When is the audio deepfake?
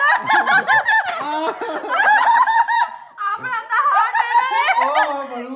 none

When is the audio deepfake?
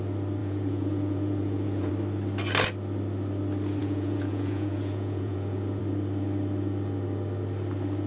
0.4-1.9; 3.8-5.8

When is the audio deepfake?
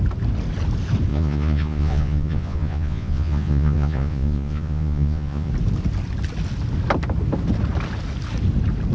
1.1-5.5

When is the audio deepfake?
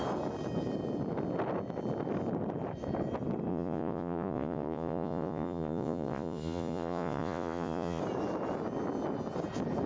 3.5-8.0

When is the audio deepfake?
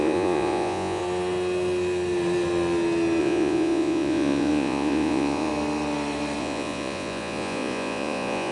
0.0-1.0; 3.2-5.5; 6.4-8.5